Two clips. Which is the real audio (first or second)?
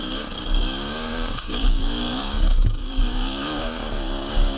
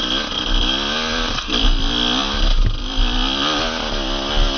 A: second